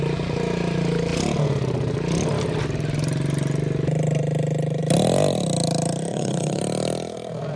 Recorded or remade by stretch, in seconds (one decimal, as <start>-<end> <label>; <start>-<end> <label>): 0.0-6.1 recorded; 6.1-6.6 remade; 6.6-7.6 recorded